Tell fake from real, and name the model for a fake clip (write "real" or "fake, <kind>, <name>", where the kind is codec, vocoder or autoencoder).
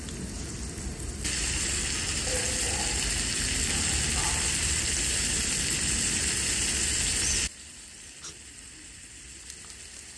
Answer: real